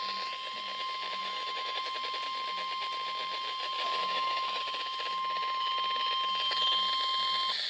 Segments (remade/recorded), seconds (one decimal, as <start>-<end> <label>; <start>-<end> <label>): 0.0-1.2 recorded; 1.2-1.8 remade; 1.8-4.0 recorded; 4.0-4.6 remade; 4.6-7.7 recorded